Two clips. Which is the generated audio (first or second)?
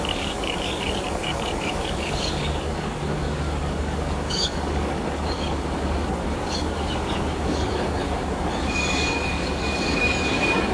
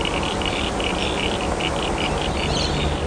first